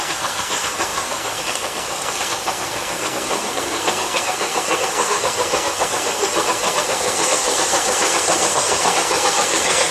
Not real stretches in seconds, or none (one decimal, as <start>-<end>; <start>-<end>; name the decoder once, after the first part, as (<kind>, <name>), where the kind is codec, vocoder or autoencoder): 0.0-9.9 (codec, SNAC)